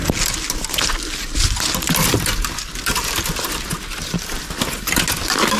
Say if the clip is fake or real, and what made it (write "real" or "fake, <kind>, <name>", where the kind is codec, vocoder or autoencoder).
real